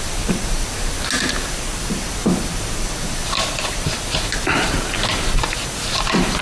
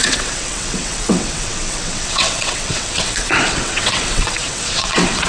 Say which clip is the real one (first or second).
first